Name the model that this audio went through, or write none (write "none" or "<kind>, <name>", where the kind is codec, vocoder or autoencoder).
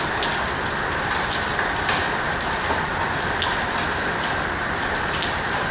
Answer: none